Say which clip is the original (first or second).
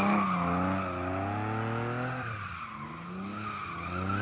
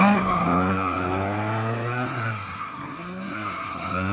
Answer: first